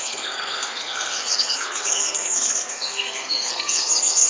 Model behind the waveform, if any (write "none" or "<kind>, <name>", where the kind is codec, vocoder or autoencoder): codec, SNAC